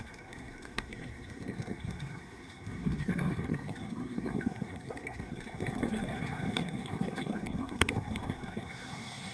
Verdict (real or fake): fake